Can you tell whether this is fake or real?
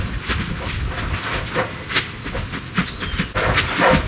real